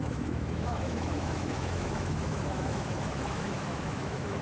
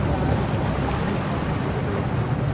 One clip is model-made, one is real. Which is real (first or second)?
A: second